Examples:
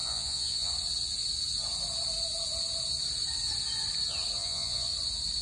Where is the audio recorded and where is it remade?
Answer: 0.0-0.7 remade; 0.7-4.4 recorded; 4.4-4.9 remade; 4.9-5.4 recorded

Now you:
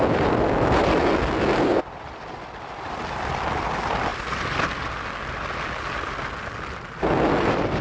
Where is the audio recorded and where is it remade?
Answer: 0.0-7.8 recorded

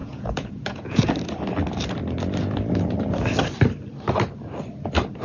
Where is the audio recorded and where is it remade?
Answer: 0.0-1.1 remade; 1.1-5.2 recorded

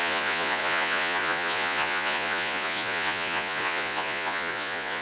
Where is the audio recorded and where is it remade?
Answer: 0.0-5.0 remade

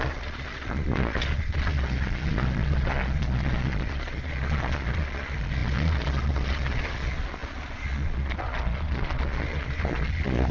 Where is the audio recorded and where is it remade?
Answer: 0.0-10.5 remade

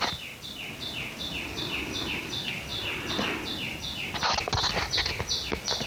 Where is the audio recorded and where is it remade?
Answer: 0.0-5.9 recorded